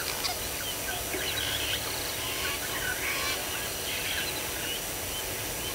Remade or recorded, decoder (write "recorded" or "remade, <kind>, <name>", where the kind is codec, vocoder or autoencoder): recorded